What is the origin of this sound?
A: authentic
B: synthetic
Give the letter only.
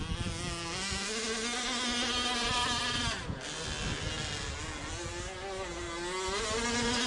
A